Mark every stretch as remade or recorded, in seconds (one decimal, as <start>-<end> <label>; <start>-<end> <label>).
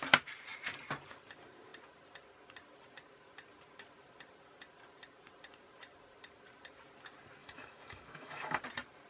0.0-7.4 recorded; 7.4-8.6 remade; 8.6-9.1 recorded